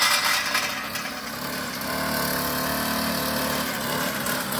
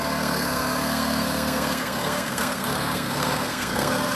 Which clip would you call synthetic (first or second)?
second